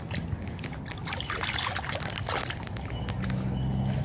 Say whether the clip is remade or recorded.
recorded